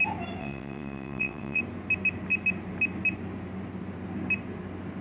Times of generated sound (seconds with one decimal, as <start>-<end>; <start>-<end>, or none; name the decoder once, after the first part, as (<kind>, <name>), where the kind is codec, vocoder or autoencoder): 0.4-1.6 (vocoder, WaveNeXt)